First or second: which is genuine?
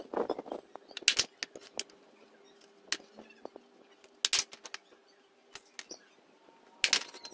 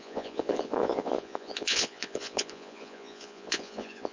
first